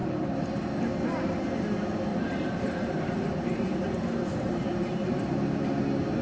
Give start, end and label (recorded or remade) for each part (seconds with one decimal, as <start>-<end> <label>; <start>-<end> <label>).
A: 0.0-0.5 remade; 0.5-2.1 recorded; 2.1-5.8 remade; 5.8-6.2 recorded